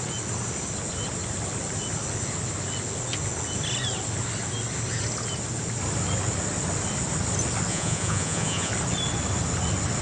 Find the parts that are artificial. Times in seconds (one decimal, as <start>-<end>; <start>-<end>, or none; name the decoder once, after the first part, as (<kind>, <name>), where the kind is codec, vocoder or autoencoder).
7.7-8.7 (vocoder, Vocos)